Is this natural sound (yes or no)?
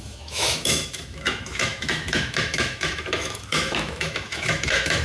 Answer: no